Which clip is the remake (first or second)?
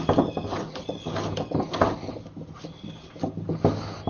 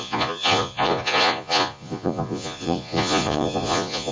second